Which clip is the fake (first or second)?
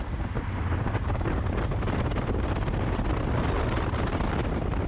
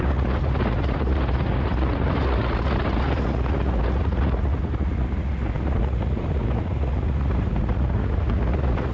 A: second